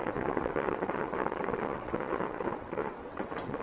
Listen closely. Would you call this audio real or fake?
fake